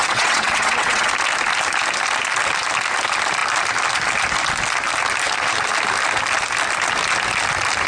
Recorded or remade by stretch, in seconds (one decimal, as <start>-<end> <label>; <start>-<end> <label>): 0.0-1.1 remade; 1.1-7.9 recorded